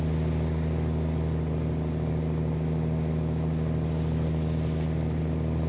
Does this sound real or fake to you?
real